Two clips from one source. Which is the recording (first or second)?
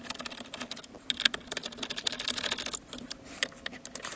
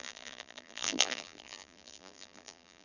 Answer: first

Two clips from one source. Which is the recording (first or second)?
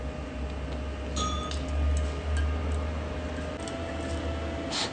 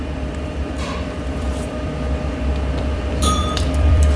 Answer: first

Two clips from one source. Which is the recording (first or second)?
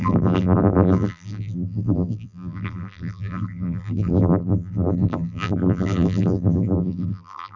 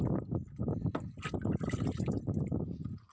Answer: second